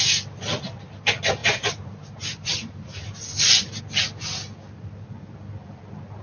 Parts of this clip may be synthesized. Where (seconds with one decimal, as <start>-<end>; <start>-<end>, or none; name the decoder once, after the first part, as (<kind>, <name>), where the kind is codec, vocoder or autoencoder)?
1.4-3.8 (vocoder, BigVGAN v2)

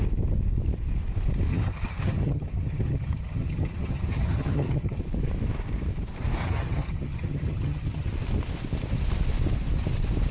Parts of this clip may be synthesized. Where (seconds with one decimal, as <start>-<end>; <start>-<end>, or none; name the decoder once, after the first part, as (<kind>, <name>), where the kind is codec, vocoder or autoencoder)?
1.5-5.0 (vocoder, HiFi-GAN); 6.4-8.1

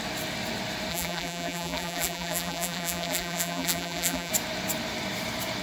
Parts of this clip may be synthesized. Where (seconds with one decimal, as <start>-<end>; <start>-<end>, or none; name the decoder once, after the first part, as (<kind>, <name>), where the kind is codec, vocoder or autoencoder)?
0.9-4.3 (vocoder, BigVGAN v2)

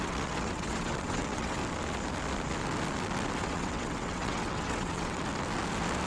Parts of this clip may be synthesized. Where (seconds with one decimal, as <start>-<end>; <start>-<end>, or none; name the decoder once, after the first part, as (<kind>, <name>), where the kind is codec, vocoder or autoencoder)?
0.0-1.6 (vocoder, WaveNeXt); 3.4-5.2

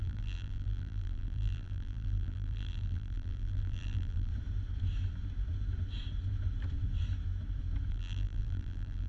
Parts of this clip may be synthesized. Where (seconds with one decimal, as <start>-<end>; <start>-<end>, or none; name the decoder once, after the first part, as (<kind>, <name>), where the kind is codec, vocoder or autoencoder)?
0.0-4.3 (vocoder, BigVGAN v2); 7.9-9.1

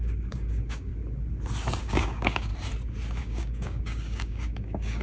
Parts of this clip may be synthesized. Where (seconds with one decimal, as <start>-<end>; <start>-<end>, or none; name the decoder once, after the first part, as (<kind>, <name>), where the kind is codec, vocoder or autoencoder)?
0.0-0.9 (codec, DAC); 1.8-2.5; 3.2-5.0

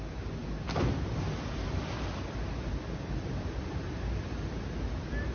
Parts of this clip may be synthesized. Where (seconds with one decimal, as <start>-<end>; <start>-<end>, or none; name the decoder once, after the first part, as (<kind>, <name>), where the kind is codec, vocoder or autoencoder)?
none

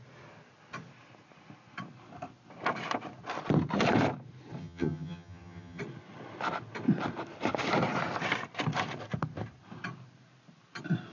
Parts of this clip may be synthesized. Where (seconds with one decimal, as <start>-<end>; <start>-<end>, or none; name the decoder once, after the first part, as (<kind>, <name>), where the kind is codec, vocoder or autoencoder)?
4.6-5.8 (vocoder, HiFi-GAN)